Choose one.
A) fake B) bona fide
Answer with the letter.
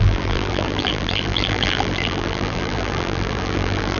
A